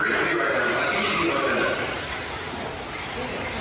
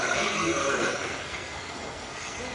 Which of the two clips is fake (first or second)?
second